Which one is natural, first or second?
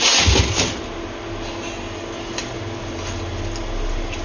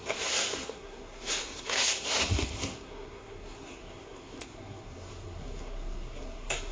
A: first